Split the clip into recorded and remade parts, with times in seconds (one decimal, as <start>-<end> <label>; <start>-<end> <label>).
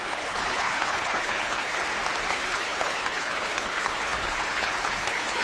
0.0-1.8 remade; 1.8-2.3 recorded; 2.3-5.4 remade